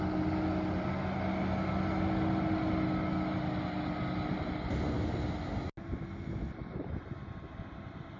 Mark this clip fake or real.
real